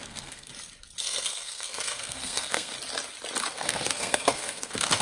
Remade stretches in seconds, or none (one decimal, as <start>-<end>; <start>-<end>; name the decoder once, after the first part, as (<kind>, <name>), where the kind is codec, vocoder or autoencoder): 0.0-0.5 (codec, SNAC); 1.0-2.7; 3.5-5.0